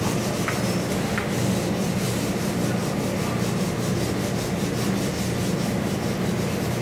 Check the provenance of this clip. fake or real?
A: real